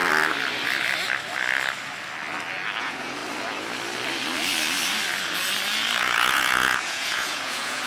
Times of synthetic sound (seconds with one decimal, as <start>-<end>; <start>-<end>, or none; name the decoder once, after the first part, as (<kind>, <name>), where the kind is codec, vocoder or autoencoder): 2.8-3.2 (vocoder, Vocos); 6.0-7.9